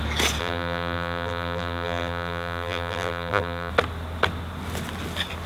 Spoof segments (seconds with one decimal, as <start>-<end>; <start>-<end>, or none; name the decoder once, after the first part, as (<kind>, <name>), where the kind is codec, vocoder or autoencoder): 0.4-3.7 (vocoder, BigVGAN v2)